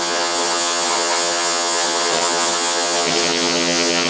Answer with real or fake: fake